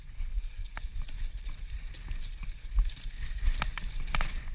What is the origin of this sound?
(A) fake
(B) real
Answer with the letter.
B